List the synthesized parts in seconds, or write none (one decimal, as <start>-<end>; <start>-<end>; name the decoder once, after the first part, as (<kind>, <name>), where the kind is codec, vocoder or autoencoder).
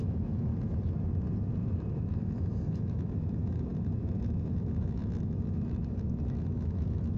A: 0.0-0.5 (autoencoder, DAC-VAE); 1.6-7.2